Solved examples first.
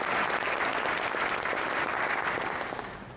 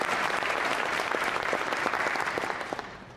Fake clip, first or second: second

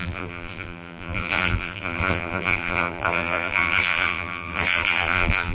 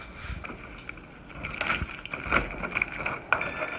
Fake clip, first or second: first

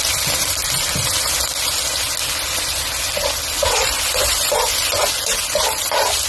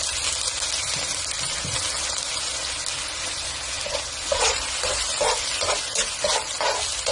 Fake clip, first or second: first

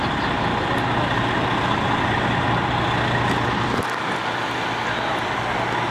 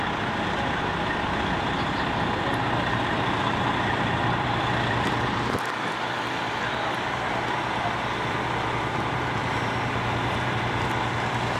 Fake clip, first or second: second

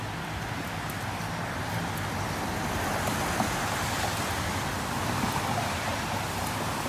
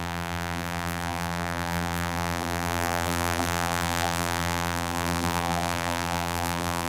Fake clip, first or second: second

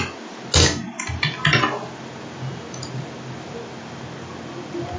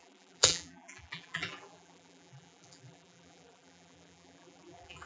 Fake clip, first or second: second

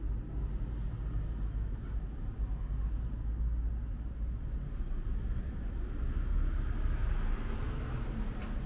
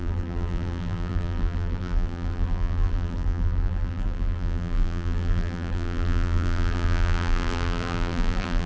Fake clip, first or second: second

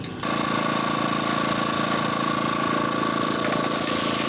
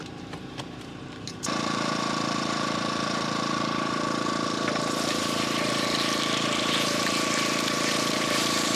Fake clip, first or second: second